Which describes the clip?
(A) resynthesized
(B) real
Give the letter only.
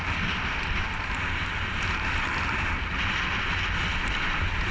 B